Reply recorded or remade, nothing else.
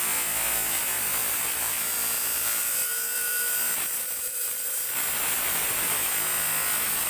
recorded